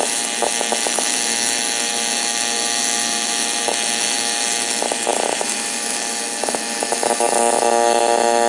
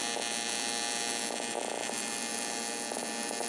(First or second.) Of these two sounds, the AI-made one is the first